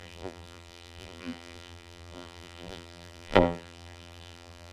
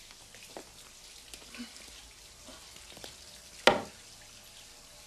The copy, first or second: first